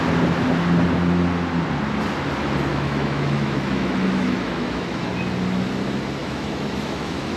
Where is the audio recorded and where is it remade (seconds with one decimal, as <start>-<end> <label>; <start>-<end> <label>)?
0.0-2.7 recorded; 2.7-5.1 remade; 5.1-6.2 recorded; 6.2-7.4 remade